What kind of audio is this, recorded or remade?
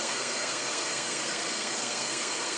remade